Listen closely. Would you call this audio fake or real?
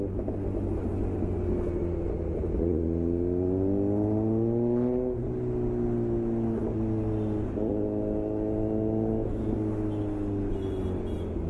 real